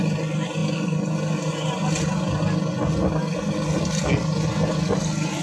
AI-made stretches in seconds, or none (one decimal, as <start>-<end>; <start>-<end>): none